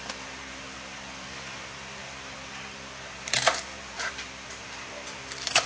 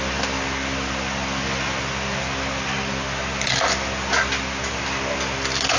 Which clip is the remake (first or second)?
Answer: first